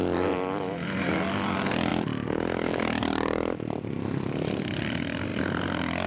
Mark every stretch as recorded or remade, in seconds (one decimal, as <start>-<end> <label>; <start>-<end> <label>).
0.0-6.1 recorded